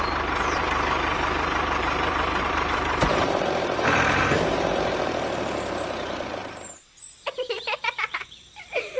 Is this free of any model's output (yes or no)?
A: no